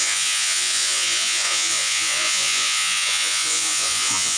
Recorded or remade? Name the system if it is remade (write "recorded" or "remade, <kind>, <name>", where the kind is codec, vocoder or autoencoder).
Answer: remade, vocoder, Vocos